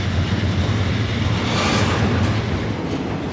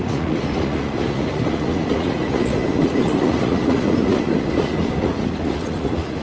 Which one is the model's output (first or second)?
second